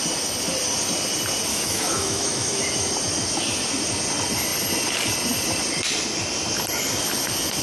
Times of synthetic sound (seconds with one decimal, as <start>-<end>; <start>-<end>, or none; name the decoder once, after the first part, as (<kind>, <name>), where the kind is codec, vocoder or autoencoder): 1.5-2.6 (autoencoder, DAC-VAE)